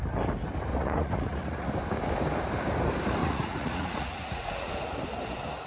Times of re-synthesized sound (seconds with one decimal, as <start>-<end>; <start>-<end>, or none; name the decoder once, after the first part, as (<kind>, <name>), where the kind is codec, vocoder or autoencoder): 0.7-1.7 (vocoder, Vocos); 3.2-4.7